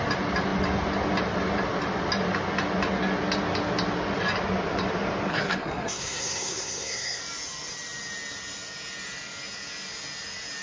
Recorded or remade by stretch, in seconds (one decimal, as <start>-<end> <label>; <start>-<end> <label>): 0.0-5.3 recorded; 5.3-7.2 remade; 7.2-10.6 recorded